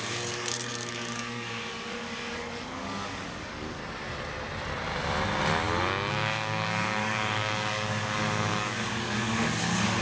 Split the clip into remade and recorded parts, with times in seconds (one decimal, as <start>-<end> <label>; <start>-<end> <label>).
0.0-3.8 remade; 3.8-6.1 recorded; 6.1-10.0 remade